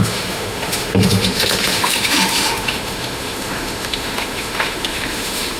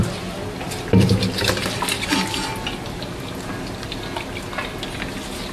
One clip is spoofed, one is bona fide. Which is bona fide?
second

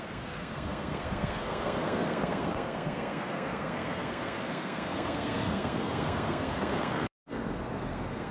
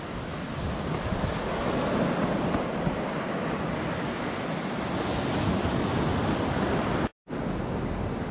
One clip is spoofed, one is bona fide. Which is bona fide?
second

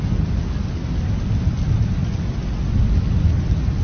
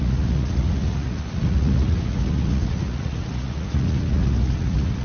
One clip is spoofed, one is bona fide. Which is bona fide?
first